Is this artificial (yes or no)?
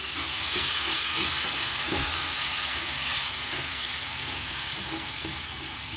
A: yes